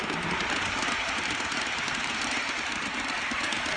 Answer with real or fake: fake